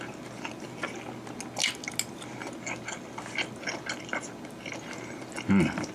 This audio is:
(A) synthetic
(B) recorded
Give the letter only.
B